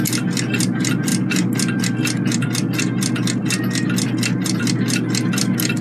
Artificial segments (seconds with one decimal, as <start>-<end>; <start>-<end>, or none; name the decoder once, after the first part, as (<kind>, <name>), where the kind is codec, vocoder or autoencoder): none